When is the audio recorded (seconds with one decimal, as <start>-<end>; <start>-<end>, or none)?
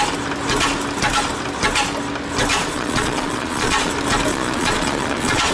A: 0.0-2.5; 3.9-4.3